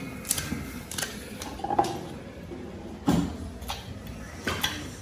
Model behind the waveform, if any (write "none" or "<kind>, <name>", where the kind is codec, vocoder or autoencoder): none